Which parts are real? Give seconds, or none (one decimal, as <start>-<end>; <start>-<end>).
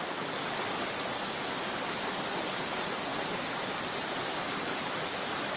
0.0-5.6